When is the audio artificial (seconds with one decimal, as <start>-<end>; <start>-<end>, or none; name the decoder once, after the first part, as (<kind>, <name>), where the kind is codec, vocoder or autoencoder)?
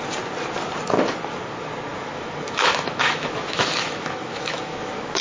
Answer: 1.9-5.2 (autoencoder, DAC-VAE)